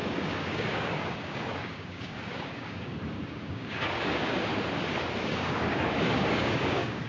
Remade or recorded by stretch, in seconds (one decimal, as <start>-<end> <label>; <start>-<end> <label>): 0.0-4.5 remade; 4.5-5.2 recorded; 5.2-7.1 remade